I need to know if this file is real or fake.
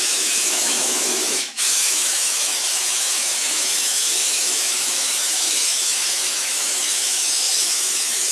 fake